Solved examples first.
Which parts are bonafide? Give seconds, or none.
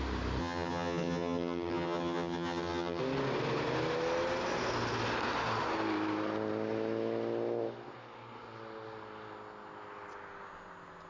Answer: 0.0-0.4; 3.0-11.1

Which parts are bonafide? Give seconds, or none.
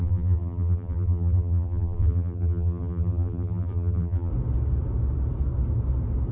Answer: 4.3-6.3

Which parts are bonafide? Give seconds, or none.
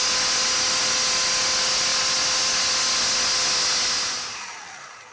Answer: 0.0-5.1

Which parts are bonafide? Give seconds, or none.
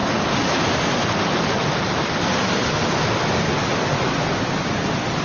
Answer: 0.0-5.2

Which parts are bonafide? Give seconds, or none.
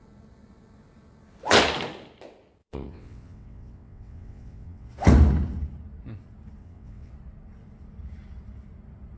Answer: 0.0-2.6; 4.9-6.6; 7.1-9.2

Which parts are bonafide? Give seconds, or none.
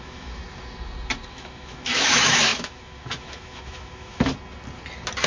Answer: 0.4-1.3; 4.3-5.3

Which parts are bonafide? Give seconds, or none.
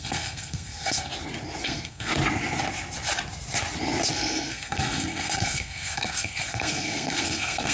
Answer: 1.1-1.6; 2.1-4.1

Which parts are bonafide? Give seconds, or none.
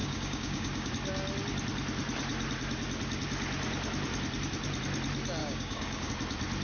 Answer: 0.9-5.4; 6.1-6.6